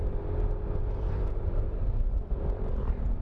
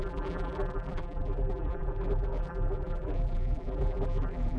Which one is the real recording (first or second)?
first